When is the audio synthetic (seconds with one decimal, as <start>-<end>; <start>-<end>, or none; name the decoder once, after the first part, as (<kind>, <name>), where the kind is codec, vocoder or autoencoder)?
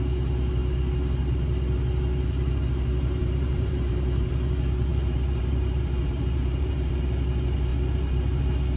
3.2-4.3 (vocoder, BigVGAN v2); 4.9-6.9; 7.7-8.4